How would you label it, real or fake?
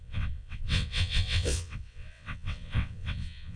fake